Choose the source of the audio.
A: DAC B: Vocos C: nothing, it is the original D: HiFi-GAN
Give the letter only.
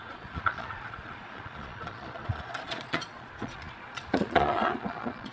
B